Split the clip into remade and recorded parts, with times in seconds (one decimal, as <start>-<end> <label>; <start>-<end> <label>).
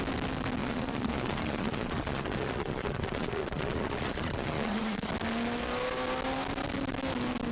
0.0-0.6 recorded; 0.6-5.1 remade; 5.1-7.5 recorded